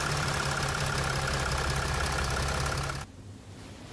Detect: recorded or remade recorded